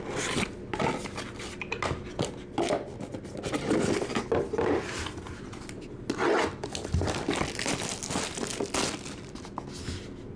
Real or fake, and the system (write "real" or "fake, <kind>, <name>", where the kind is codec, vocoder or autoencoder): real